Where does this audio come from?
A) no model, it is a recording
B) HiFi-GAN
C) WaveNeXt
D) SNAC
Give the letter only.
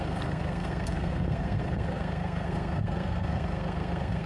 D